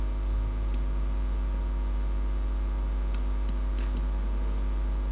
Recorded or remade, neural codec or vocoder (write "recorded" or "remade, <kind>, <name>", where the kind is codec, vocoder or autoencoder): recorded